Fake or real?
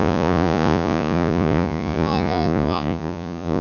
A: fake